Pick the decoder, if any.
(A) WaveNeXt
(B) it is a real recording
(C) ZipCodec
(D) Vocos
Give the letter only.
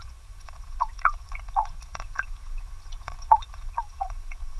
D